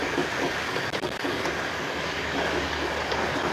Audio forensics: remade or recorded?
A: remade